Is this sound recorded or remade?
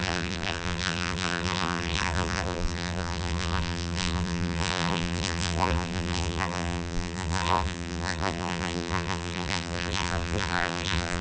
remade